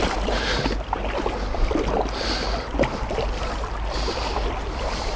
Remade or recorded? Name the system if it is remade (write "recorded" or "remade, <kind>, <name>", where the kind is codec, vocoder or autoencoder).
recorded